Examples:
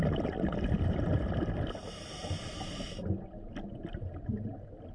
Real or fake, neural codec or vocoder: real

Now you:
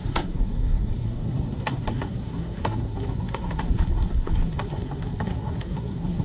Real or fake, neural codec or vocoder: fake, codec, SNAC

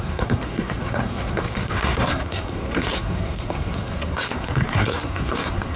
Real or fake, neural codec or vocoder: fake, codec, SNAC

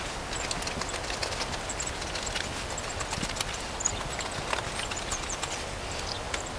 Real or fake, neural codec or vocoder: real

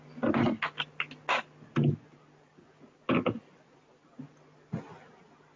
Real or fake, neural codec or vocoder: real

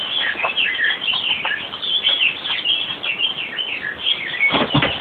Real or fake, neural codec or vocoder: real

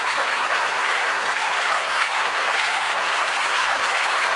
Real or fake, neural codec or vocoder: fake, codec, SNAC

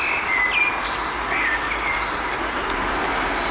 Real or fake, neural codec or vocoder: real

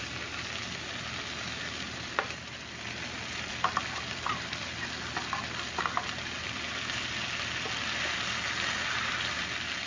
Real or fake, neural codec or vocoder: real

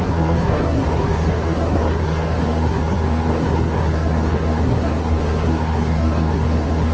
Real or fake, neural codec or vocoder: fake, codec, SNAC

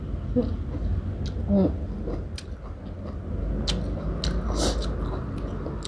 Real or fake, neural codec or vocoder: real